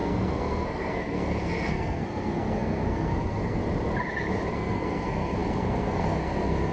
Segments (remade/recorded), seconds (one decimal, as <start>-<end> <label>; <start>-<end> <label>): 0.0-3.6 remade; 3.6-4.5 recorded; 4.5-6.7 remade